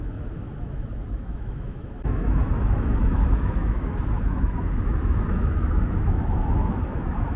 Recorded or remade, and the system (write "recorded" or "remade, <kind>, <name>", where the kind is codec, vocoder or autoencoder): remade, autoencoder, DAC-VAE